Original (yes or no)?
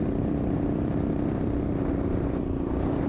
yes